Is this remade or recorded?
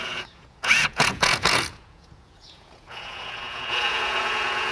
remade